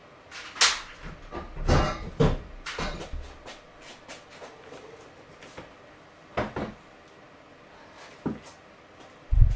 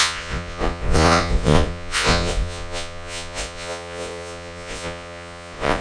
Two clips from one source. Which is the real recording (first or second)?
first